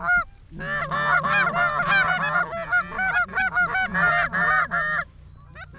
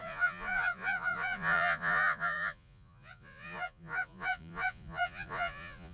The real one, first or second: first